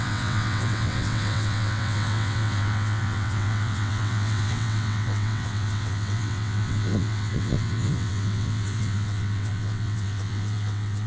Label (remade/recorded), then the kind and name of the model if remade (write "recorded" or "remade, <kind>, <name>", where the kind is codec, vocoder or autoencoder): remade, vocoder, WaveNeXt